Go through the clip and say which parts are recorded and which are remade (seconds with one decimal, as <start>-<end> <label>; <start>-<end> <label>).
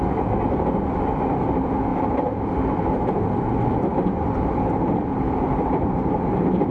0.0-6.7 recorded